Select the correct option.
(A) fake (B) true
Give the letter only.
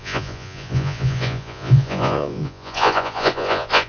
A